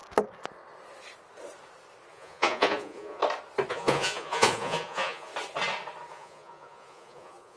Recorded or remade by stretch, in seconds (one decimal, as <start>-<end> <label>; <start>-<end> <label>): 0.0-2.1 recorded; 2.1-3.2 remade; 3.2-3.7 recorded; 3.7-5.3 remade; 5.3-6.1 recorded; 6.1-7.6 remade

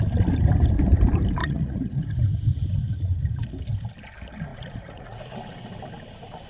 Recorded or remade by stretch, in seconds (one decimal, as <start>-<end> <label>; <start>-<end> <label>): 0.0-1.4 recorded; 1.4-2.0 remade; 2.0-4.5 recorded; 4.5-5.2 remade; 5.2-6.5 recorded

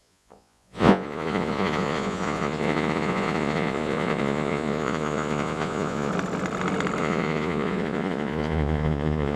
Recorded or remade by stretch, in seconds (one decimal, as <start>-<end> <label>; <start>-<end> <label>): 0.0-6.1 remade; 6.1-7.0 recorded; 7.0-9.4 remade

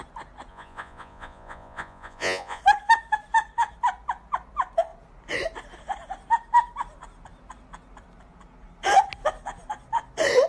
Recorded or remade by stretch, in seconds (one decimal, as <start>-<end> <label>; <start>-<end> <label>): 0.0-0.5 recorded; 0.5-2.6 remade; 2.6-10.5 recorded

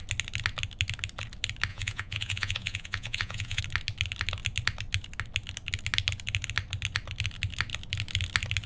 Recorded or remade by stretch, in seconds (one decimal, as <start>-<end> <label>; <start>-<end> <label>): 0.0-1.7 recorded; 1.7-3.6 remade; 3.6-8.7 recorded

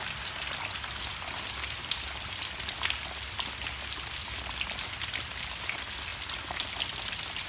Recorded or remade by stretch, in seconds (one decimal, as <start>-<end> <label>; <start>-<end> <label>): 0.0-7.5 recorded

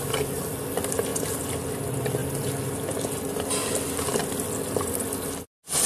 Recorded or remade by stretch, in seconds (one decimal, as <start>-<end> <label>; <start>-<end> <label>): 0.0-5.9 recorded

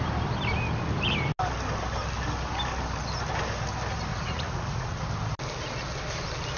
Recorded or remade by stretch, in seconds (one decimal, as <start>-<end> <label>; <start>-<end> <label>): 0.0-4.1 recorded; 4.1-5.0 remade; 5.0-6.6 recorded